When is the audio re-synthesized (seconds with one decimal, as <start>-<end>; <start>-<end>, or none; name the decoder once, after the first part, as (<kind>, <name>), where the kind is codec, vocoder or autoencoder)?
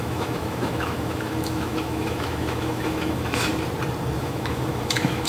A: 0.0-3.5 (autoencoder, DAC-VAE); 4.2-5.3